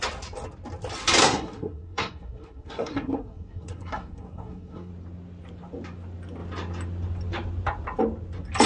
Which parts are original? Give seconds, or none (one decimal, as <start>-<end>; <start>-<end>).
0.0-1.2; 4.9-8.7